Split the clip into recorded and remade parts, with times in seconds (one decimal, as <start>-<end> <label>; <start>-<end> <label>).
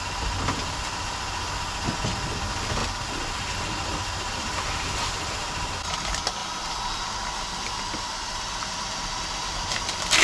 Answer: 0.0-3.9 recorded; 3.9-4.6 remade; 4.6-6.4 recorded; 6.4-10.2 remade